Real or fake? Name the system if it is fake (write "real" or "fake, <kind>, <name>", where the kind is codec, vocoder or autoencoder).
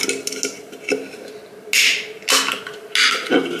real